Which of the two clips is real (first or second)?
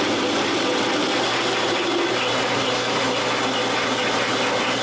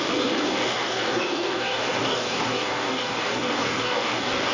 first